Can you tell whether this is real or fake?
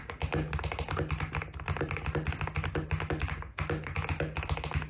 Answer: real